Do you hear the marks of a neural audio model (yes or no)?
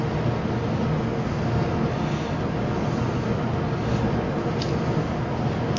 no